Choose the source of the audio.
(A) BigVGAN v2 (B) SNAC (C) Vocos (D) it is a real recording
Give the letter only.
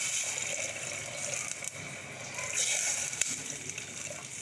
D